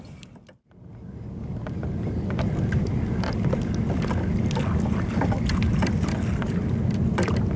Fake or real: real